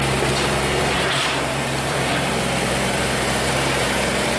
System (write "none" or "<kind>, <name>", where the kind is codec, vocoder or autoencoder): vocoder, BigVGAN v2